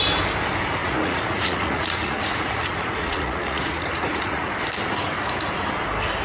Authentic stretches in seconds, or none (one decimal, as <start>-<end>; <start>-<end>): 0.0-0.8; 4.5-6.2